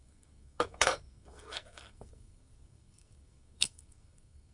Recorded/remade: remade